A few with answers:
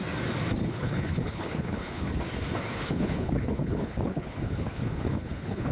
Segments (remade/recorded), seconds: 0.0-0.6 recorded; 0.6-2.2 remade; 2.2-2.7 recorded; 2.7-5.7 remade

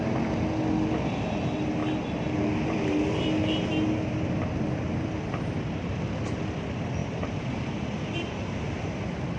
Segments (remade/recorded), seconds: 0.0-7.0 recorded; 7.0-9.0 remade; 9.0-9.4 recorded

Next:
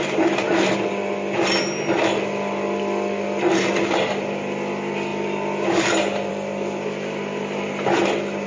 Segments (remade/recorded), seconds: 0.0-8.5 recorded